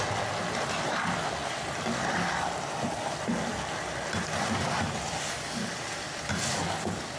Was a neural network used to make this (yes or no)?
no